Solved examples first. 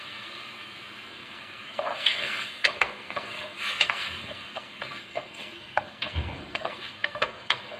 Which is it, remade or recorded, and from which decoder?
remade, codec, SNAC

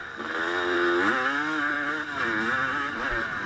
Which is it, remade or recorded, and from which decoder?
recorded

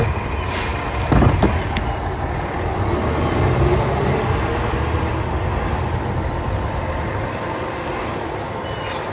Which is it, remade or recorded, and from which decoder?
recorded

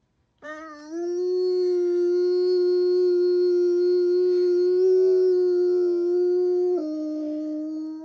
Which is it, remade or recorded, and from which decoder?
recorded